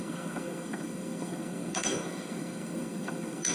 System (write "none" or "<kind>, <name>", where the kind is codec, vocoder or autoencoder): codec, SNAC